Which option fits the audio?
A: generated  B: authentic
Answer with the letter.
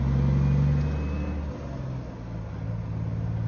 B